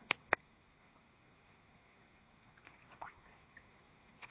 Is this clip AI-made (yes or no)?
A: yes